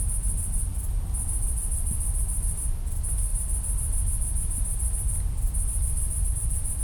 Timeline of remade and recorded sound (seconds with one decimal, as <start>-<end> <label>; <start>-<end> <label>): 0.0-6.8 recorded